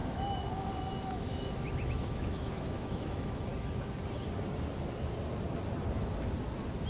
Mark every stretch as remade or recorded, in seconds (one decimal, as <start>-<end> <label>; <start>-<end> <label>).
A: 0.0-3.5 remade; 3.5-6.9 recorded